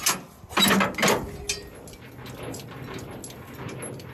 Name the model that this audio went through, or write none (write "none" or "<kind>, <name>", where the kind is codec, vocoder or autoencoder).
none